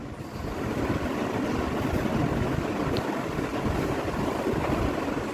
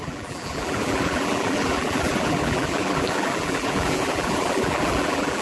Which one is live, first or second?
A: first